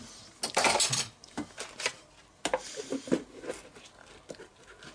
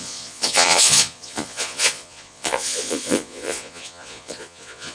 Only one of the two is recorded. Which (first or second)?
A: first